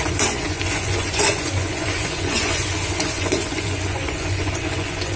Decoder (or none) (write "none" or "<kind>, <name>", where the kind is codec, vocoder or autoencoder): vocoder, Vocos